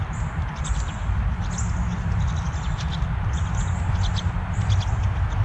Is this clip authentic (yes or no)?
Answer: yes